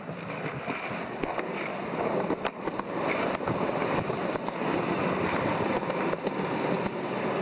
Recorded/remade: remade